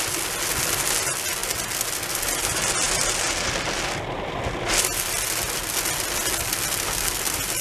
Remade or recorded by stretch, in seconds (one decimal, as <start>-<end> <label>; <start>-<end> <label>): 0.0-7.6 recorded

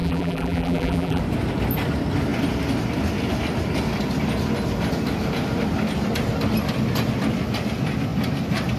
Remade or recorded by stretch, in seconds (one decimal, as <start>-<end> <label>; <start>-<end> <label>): 0.0-1.2 remade; 1.2-8.8 recorded

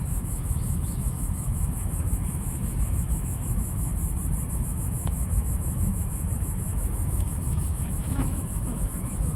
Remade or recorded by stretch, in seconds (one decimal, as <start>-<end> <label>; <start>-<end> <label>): 0.0-3.9 remade; 3.9-4.5 recorded; 4.5-9.4 remade

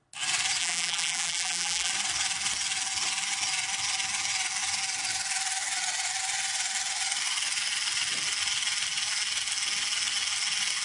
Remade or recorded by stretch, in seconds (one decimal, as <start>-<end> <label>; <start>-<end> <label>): 0.0-0.6 recorded; 0.6-1.9 remade; 1.9-10.8 recorded

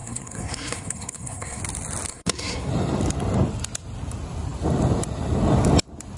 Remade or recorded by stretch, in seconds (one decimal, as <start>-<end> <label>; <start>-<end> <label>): 0.0-1.6 remade; 1.6-2.1 recorded; 2.1-2.7 remade; 2.7-6.2 recorded

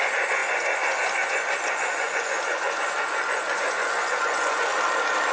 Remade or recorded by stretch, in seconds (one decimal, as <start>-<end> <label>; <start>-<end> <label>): 0.0-4.7 remade; 4.7-5.3 recorded

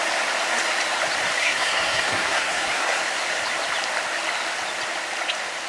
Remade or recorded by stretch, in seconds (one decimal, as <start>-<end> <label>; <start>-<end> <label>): 0.0-1.4 recorded; 1.4-3.0 remade; 3.0-5.7 recorded